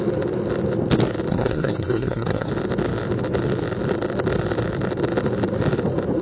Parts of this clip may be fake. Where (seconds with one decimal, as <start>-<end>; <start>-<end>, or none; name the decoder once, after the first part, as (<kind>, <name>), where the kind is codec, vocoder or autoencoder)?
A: 1.3-2.5 (codec, SNAC)